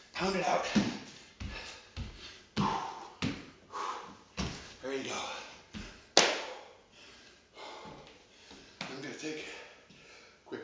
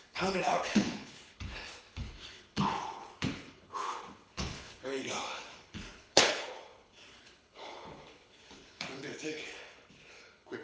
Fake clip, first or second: second